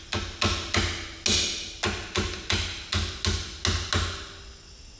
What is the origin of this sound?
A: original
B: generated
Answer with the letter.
A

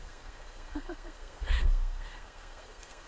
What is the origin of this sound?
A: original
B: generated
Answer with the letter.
B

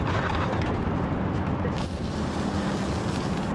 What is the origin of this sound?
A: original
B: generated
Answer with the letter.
A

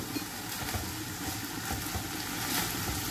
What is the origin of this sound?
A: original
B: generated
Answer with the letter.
A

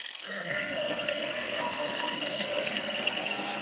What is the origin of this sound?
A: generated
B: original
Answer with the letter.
A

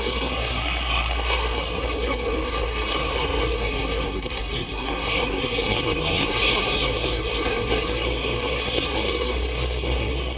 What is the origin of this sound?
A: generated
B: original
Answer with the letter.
A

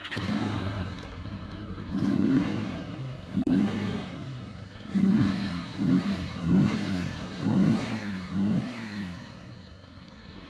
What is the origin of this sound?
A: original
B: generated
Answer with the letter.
B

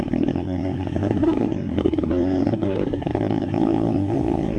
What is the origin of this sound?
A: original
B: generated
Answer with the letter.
B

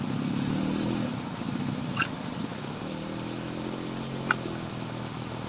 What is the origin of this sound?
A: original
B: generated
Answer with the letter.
A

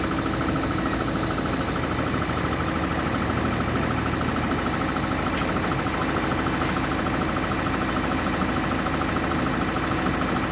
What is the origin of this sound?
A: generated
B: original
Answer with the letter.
B